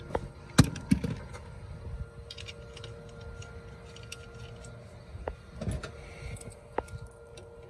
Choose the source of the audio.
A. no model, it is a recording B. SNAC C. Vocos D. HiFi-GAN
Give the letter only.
A